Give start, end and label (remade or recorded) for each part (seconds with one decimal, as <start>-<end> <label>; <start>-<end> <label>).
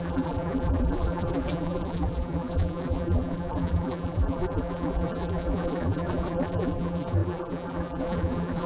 0.0-8.7 remade